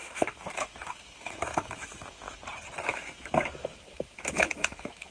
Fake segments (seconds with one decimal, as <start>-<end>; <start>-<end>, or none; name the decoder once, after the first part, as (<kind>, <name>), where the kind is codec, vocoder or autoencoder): 0.0-2.4 (autoencoder, DAC-VAE); 2.9-5.1